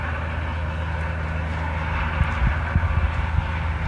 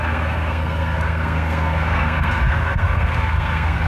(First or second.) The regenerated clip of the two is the second